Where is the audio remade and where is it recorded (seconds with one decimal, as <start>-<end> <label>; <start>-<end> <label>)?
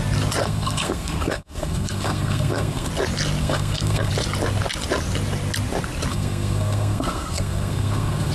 0.0-0.4 recorded; 0.4-2.9 remade; 2.9-3.4 recorded; 3.4-4.1 remade; 4.1-6.1 recorded; 6.1-8.3 remade